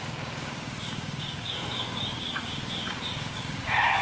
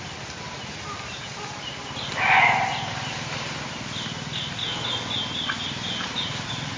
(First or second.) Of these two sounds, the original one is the second